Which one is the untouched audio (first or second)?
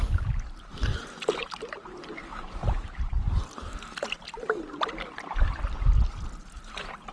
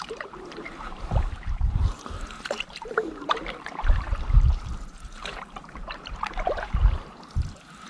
first